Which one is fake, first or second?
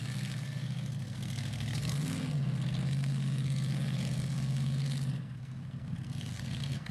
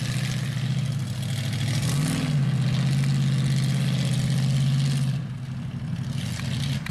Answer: first